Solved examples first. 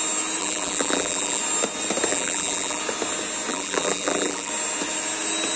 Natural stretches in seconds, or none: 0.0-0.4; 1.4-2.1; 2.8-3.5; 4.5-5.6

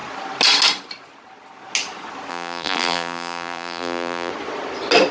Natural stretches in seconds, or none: 0.0-2.3; 4.3-5.1

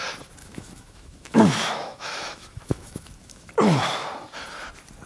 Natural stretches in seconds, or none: 0.0-0.4; 3.5-5.1

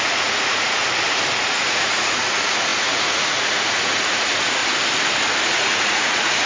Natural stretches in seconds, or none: 0.8-1.4; 4.6-5.4